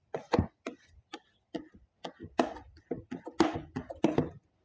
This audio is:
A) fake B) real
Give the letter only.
B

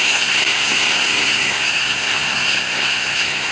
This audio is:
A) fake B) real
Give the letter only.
A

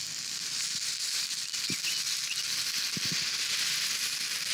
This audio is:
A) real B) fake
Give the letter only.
A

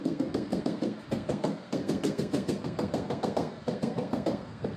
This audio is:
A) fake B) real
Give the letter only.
A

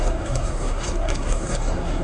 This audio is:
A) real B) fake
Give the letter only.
B